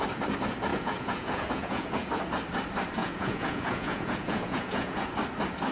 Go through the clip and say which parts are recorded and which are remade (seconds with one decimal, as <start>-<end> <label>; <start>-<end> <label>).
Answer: 0.0-0.7 recorded; 0.7-2.1 remade; 2.1-3.0 recorded; 3.0-5.1 remade; 5.1-5.7 recorded